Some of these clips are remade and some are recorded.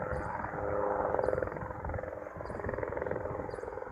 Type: recorded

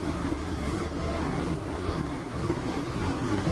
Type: remade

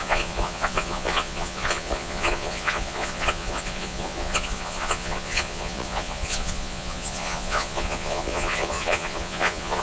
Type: remade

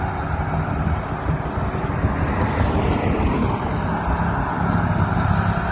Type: recorded